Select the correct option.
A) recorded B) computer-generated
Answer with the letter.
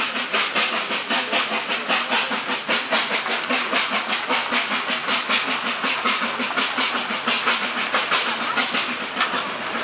A